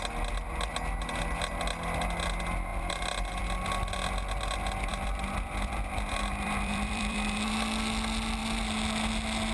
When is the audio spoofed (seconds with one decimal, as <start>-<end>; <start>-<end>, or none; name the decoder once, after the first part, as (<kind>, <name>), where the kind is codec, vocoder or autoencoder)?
2.7-3.4 (vocoder, BigVGAN v2); 4.9-7.5